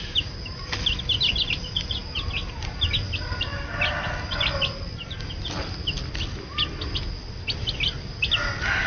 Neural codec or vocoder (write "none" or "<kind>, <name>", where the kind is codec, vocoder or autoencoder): none